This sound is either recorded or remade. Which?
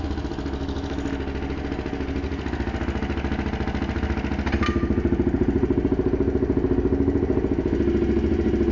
recorded